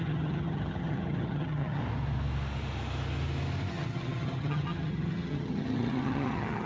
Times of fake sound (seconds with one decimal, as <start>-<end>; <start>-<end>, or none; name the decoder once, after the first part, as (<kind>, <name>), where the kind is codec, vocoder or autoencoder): 0.0-1.8 (vocoder, HiFi-GAN); 3.7-6.7

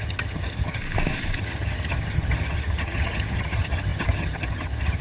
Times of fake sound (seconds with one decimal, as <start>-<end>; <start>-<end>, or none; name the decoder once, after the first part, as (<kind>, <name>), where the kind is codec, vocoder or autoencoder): 0.0-0.8 (vocoder, HiFi-GAN); 1.4-5.0

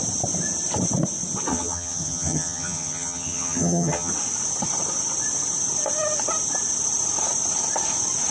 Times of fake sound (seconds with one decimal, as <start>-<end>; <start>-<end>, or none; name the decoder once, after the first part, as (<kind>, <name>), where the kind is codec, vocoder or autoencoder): 1.5-4.1 (vocoder, HiFi-GAN)